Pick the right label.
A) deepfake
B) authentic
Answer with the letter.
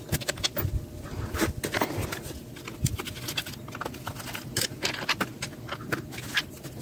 B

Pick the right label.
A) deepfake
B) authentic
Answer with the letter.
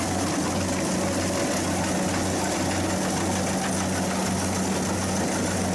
B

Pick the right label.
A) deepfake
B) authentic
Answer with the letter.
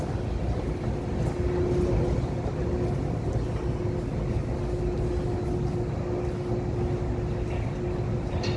B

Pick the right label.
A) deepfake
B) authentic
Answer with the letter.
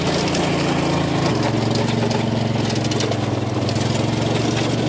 B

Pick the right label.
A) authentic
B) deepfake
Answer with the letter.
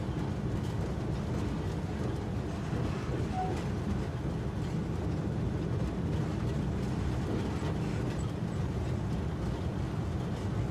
A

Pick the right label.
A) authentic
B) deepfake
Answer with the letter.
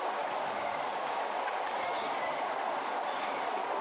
A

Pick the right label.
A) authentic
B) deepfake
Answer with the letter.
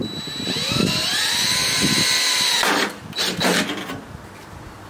A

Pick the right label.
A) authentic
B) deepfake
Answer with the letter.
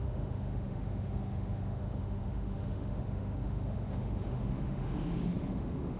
B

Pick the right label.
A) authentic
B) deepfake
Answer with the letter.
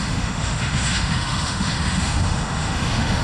B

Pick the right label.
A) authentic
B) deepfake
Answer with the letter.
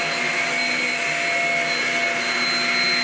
A